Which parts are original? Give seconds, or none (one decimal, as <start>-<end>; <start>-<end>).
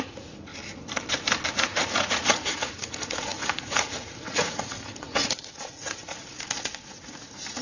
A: 0.5-1.5